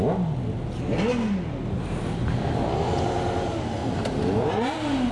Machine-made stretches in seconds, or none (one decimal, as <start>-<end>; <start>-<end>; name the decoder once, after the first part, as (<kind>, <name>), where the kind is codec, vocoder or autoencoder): 3.8-4.5 (vocoder, BigVGAN v2)